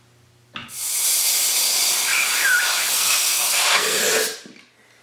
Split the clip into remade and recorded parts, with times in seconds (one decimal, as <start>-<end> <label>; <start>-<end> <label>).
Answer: 0.0-2.8 recorded; 2.8-4.0 remade; 4.0-5.0 recorded